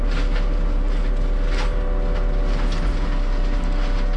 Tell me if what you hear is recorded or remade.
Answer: recorded